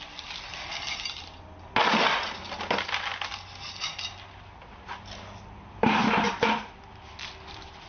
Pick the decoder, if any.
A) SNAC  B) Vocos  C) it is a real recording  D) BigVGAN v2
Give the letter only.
C